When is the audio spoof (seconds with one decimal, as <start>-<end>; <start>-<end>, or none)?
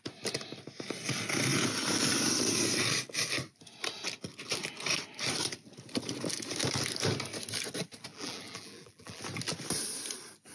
8.1-9.2